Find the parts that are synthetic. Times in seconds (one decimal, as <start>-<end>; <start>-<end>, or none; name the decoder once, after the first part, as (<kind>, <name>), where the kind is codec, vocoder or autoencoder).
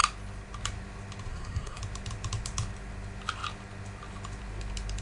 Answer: 1.3-1.8 (codec, SNAC)